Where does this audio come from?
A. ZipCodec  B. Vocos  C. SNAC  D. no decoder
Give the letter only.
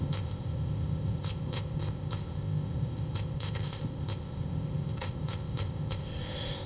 A